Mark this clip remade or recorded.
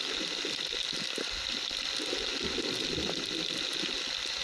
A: recorded